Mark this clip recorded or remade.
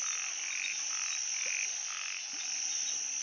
recorded